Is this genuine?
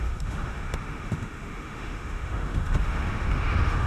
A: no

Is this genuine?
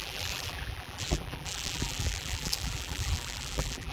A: no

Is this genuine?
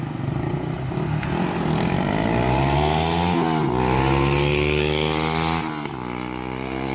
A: yes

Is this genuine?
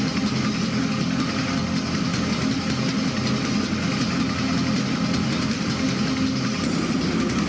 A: yes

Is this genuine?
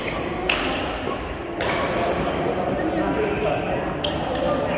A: yes